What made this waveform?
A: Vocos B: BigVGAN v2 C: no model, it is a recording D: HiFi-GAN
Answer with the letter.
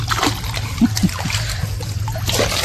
C